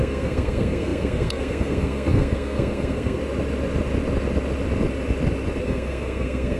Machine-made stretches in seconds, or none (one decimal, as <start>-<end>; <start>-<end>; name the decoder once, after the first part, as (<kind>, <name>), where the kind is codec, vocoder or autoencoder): 0.0-3.2 (codec, SNAC); 5.6-6.6